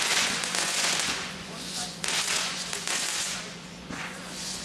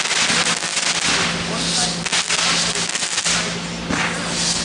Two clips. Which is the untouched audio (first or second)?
second